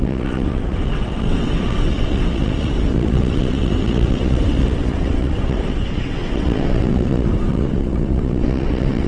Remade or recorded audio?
remade